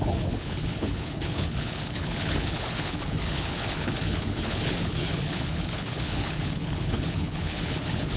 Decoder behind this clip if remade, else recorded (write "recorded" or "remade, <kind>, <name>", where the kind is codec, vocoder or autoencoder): remade, codec, HILCodec